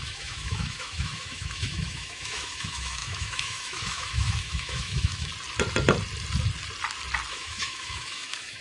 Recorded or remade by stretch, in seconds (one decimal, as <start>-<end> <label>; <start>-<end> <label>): 0.0-5.3 remade; 5.3-7.3 recorded; 7.3-8.6 remade